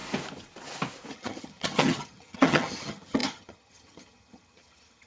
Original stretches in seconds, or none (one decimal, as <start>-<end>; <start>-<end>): 0.0-1.1